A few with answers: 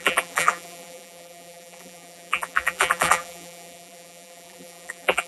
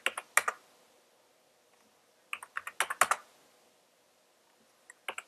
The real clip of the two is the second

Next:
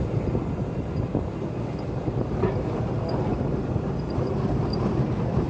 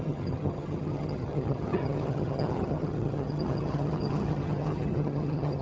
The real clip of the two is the first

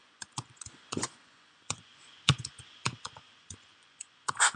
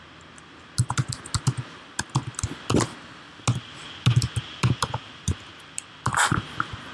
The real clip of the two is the second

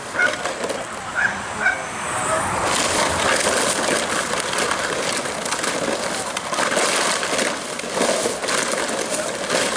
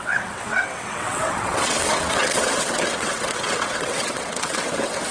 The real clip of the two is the first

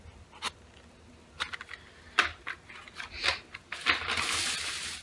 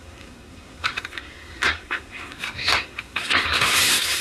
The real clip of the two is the first